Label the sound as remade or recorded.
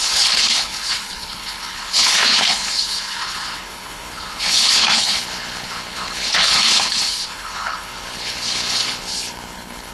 remade